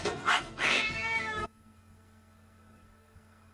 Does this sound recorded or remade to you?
remade